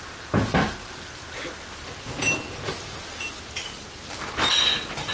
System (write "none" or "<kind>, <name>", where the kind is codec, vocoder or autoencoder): none